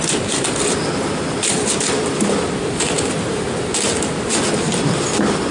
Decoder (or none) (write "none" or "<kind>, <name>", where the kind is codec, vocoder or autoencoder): none